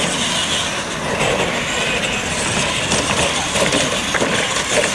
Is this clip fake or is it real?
real